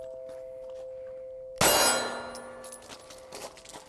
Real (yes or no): yes